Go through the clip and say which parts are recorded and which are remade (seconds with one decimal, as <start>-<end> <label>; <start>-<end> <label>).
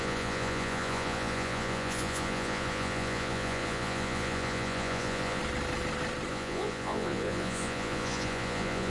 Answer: 0.0-5.4 remade; 5.4-6.3 recorded; 6.3-8.9 remade